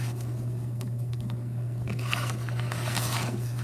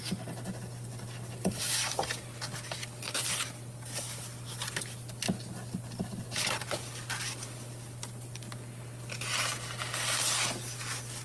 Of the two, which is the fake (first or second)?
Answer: first